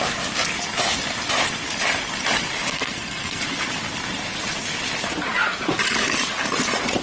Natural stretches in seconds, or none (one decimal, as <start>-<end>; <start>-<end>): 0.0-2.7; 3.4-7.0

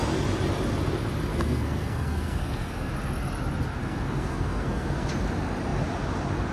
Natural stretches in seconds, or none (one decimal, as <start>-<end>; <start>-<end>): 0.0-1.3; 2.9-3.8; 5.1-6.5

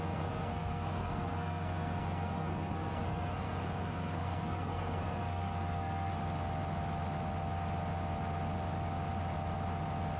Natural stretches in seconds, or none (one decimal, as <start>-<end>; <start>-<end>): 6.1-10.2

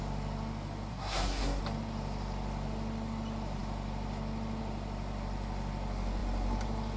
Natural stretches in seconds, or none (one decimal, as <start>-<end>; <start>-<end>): 0.0-0.9; 1.6-7.0

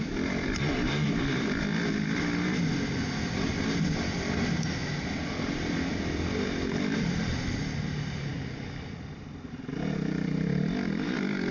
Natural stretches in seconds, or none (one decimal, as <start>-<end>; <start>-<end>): 0.0-11.5

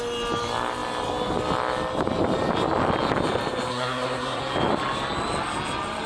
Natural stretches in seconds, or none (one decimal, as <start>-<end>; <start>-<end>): 0.0-3.7; 4.4-6.1

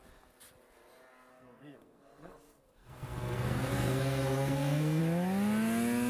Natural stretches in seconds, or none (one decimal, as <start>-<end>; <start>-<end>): 0.0-1.3; 5.0-6.1

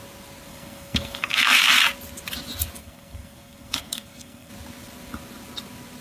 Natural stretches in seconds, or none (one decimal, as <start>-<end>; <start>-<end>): 0.0-0.5; 1.6-2.8; 4.5-6.0